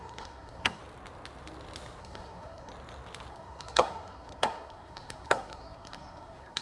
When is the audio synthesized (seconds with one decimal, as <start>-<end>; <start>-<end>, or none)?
0.0-0.8; 2.0-2.7; 3.3-6.6